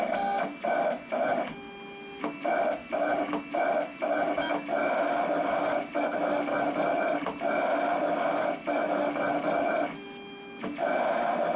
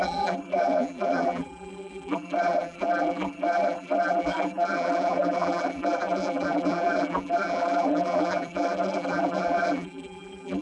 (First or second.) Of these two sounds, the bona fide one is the first